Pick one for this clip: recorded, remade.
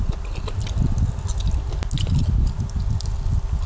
recorded